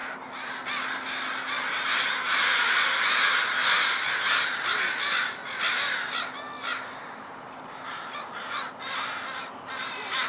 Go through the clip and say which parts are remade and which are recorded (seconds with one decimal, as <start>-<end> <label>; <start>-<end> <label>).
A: 0.0-10.3 recorded